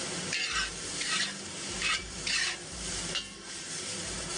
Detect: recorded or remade remade